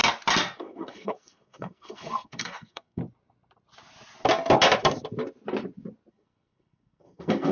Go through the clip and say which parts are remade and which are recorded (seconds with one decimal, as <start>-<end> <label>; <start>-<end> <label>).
0.0-0.6 recorded; 0.6-3.0 remade; 3.0-6.1 recorded; 6.1-7.5 remade